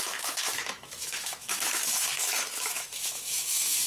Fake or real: fake